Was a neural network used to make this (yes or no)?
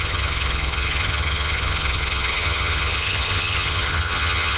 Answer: yes